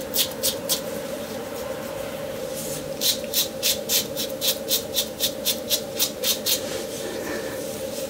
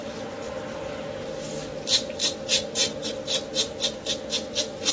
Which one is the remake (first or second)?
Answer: first